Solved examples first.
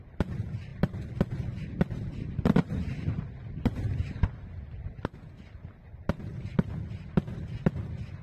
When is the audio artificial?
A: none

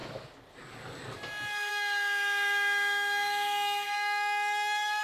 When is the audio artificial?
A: 1.7-5.0 (autoencoder, DAC-VAE)

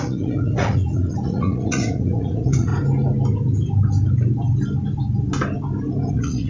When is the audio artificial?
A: 0.0-2.7 (vocoder, Vocos); 6.1-6.5

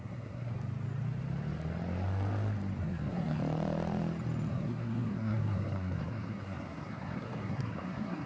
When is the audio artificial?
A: 0.0-0.5 (codec, SNAC); 2.8-3.4; 4.5-8.3

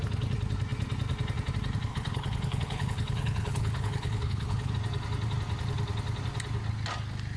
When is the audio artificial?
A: 1.9-4.7 (codec, HILCodec)